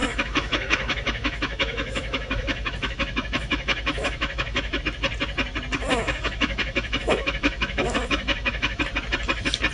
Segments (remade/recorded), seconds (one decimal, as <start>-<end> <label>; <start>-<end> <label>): 0.0-4.8 remade; 4.8-5.9 recorded; 5.9-8.8 remade; 8.8-9.7 recorded